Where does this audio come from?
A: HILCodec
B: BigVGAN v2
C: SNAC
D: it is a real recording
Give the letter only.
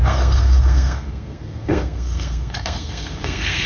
C